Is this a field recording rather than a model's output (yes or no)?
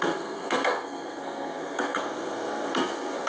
no